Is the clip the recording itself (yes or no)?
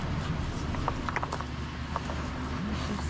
yes